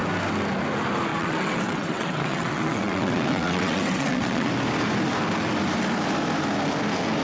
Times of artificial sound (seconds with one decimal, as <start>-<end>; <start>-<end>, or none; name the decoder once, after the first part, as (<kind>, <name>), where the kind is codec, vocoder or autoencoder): 1.1-4.5 (vocoder, WaveNeXt)